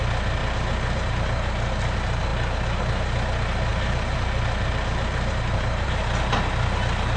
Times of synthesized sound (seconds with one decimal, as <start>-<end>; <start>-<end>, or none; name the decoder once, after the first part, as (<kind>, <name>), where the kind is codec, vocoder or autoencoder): 0.4-1.2 (vocoder, BigVGAN v2); 3.7-6.0